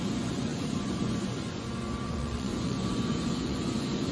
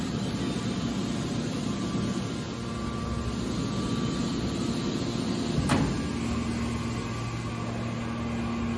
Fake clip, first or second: first